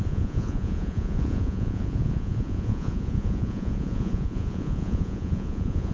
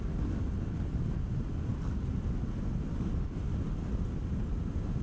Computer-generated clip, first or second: first